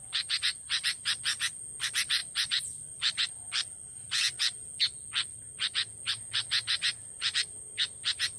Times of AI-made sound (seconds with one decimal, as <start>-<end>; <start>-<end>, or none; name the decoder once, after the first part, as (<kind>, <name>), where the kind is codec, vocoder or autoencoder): 0.0-1.2 (vocoder, BigVGAN v2); 2.2-4.2; 5.3-8.4